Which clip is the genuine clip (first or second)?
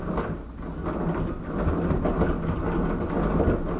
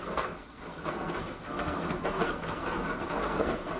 first